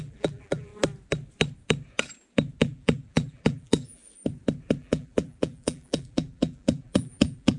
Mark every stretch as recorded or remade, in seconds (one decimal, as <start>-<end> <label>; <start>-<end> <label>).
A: 0.0-0.7 remade; 0.7-2.6 recorded; 2.6-4.0 remade; 4.0-4.8 recorded; 4.8-7.6 remade